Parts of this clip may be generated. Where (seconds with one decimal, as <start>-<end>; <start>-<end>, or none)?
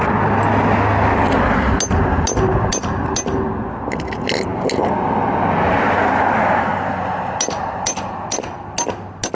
none